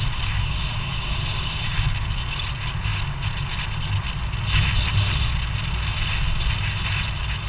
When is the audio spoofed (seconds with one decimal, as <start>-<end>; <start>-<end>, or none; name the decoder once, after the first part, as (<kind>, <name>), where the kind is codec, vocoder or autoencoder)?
none